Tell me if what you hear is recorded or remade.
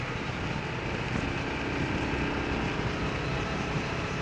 recorded